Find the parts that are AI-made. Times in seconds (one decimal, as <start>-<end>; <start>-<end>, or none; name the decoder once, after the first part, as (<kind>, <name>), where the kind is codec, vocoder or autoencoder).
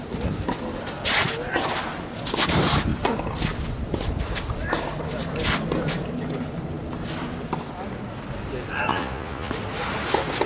8.9-9.5 (vocoder, Vocos)